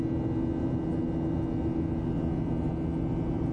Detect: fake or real real